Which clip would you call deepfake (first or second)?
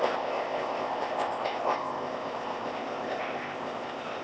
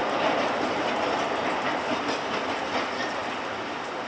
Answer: first